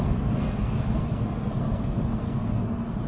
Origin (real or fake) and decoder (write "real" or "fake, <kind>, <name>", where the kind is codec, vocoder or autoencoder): fake, codec, SNAC